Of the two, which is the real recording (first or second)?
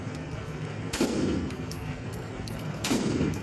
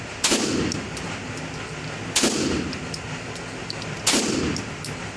second